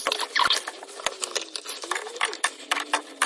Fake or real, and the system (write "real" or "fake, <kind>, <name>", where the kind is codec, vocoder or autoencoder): real